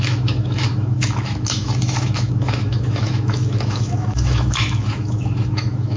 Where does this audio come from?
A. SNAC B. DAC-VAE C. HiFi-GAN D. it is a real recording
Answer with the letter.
B